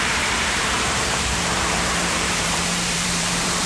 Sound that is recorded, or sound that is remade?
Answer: remade